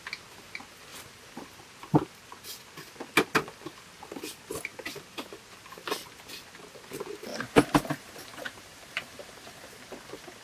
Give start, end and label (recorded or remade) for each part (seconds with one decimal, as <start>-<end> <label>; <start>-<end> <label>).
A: 0.0-0.9 recorded; 0.9-1.5 remade; 1.5-7.3 recorded; 7.3-9.8 remade; 9.8-10.4 recorded